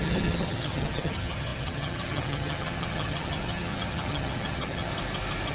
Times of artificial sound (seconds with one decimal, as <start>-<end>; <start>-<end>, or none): 0.0-4.9